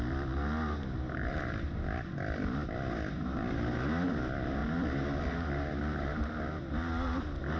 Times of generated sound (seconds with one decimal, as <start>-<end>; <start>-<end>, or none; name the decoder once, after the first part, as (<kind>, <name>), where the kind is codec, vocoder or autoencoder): none

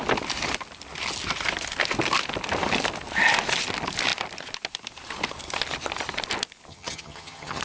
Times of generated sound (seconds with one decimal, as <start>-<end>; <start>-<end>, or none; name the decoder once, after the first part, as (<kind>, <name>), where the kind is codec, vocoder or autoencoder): 6.7-7.6 (vocoder, HiFi-GAN)